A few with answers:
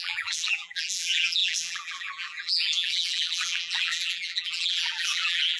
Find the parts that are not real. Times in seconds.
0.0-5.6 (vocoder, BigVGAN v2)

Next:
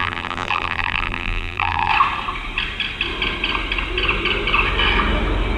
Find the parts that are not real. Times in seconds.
0.0-1.9 (vocoder, BigVGAN v2)